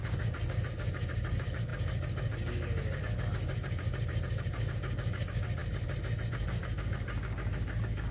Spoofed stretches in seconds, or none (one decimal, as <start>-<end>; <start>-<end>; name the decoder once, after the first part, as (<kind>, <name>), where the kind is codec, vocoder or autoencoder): 0.0-5.6 (codec, DAC); 6.3-8.1